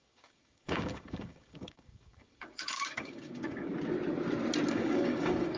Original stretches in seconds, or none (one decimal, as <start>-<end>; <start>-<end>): 3.7-4.7

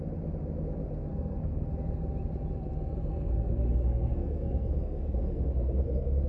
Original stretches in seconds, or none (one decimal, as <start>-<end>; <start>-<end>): 0.0-1.1; 1.7-3.0

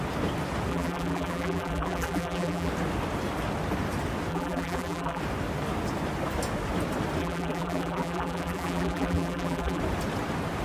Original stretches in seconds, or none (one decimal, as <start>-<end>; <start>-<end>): 0.0-0.7; 2.7-4.3; 5.2-7.2; 9.8-10.6

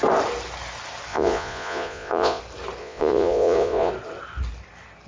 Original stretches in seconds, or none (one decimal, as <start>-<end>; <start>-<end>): 0.0-1.1; 2.4-2.8; 3.9-5.1

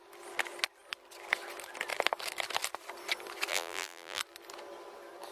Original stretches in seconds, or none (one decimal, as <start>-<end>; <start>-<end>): 0.0-3.5; 4.2-5.3